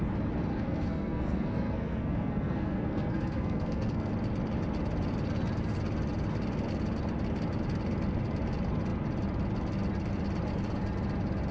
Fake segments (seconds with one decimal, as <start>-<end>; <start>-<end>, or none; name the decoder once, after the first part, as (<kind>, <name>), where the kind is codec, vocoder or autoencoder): 0.5-4.1 (codec, SNAC)

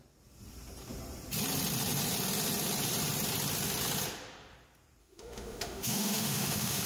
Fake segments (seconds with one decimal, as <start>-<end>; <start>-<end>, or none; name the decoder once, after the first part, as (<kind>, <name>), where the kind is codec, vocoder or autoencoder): 5.0-6.9 (autoencoder, DAC-VAE)

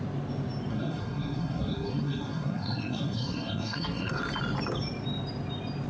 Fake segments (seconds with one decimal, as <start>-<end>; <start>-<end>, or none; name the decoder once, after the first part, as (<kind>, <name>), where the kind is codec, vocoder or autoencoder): 0.7-4.2 (codec, SNAC)

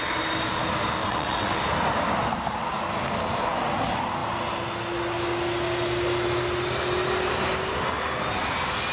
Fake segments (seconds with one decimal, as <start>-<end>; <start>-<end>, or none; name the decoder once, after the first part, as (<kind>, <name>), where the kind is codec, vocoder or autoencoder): 1.0-1.6 (vocoder, WaveNeXt)